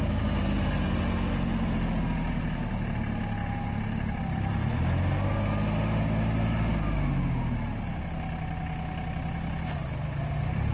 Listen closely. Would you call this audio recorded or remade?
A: recorded